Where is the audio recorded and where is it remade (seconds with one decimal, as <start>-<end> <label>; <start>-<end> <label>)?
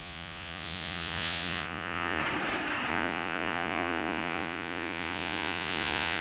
0.0-2.2 remade; 2.2-2.9 recorded; 2.9-6.2 remade